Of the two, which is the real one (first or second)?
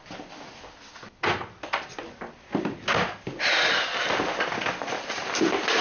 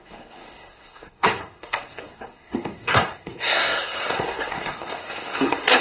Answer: first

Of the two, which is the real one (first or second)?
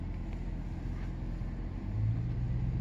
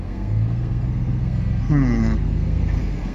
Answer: first